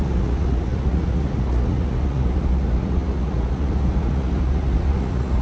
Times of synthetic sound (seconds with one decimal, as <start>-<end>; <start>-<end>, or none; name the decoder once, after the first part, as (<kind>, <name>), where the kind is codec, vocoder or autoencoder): 0.0-5.4 (vocoder, Vocos)